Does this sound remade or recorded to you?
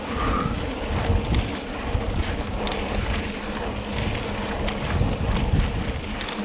recorded